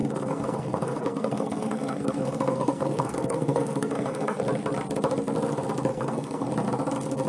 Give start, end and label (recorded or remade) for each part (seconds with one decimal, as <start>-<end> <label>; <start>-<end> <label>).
0.0-4.4 remade; 4.4-5.9 recorded; 5.9-6.5 remade; 6.5-7.3 recorded